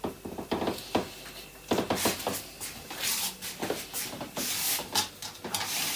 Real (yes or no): yes